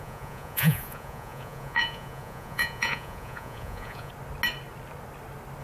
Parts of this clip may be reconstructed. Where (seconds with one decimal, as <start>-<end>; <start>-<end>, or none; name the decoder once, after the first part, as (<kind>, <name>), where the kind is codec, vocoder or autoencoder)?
0.0-4.1 (vocoder, Vocos)